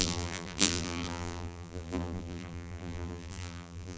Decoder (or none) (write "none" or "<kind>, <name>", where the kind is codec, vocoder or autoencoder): vocoder, BigVGAN v2